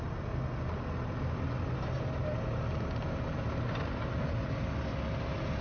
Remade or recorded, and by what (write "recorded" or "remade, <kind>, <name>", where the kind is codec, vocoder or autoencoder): recorded